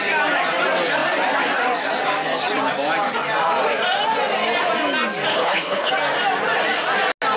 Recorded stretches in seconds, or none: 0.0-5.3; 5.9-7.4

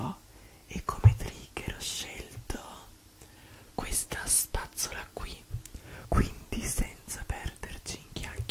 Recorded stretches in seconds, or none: 0.0-6.7; 7.8-8.5

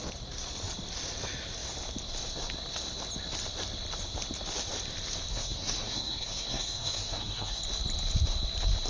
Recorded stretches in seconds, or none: 0.0-5.3; 7.6-8.9